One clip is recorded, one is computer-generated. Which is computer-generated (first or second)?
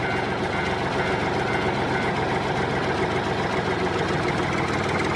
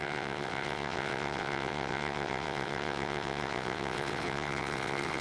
second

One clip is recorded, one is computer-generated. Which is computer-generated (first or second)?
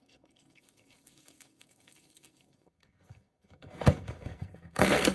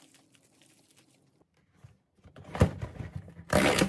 first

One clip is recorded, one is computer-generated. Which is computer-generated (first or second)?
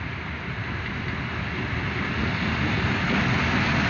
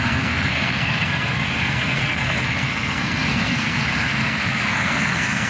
second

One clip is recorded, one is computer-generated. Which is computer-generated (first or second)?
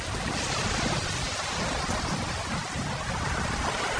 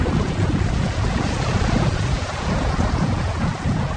second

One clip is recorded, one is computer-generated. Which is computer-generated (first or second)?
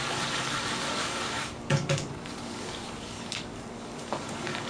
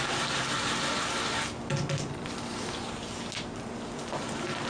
first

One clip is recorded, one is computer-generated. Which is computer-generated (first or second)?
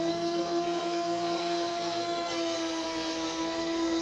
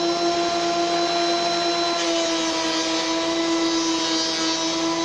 first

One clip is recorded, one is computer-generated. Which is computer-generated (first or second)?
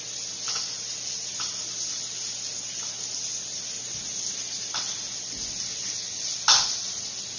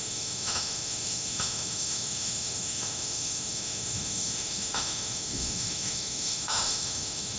second